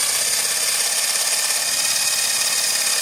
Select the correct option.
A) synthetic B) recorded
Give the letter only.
B